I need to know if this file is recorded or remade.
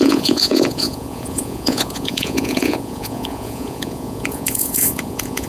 remade